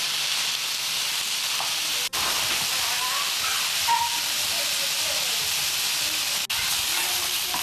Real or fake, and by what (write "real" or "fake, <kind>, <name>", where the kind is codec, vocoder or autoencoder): real